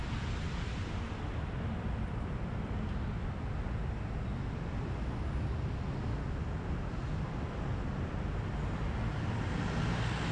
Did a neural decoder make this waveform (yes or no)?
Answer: no